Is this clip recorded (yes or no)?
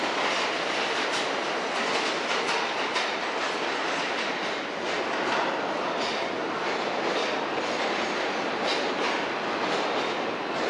yes